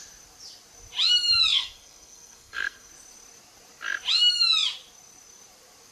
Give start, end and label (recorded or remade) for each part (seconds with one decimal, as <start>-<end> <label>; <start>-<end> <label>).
0.0-1.5 recorded; 1.5-2.9 remade; 2.9-5.9 recorded